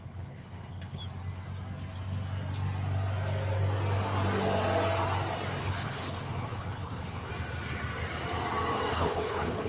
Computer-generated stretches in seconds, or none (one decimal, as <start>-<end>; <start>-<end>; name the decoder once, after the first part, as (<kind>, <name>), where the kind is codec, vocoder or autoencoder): 0.0-1.0 (codec, HILCodec); 5.6-7.3; 8.9-9.7